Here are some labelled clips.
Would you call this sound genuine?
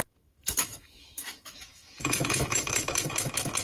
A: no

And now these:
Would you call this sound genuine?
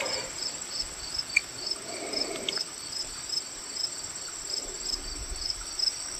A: yes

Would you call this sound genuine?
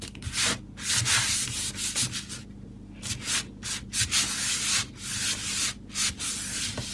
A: yes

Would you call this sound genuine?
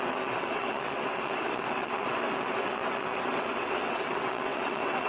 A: no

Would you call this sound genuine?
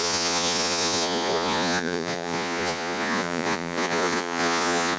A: no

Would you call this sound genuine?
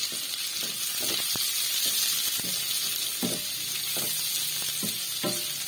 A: yes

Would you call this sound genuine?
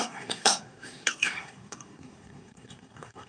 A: no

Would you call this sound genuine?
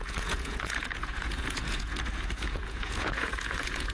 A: no